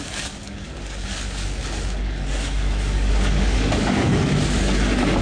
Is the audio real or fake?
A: fake